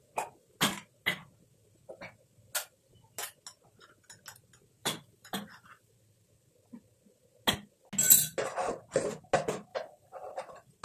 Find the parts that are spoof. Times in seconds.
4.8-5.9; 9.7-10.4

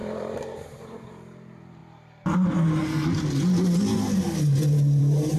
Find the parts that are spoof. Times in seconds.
0.0-1.8; 5.0-5.4

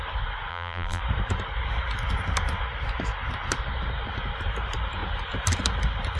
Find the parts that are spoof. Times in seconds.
0.5-1.0

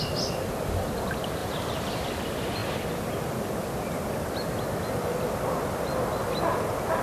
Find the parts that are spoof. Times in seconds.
1.4-2.2

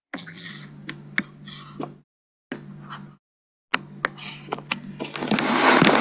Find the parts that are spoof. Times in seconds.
0.0-0.5

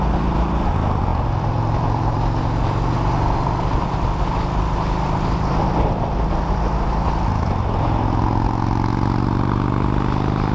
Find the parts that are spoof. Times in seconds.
1.1-2.4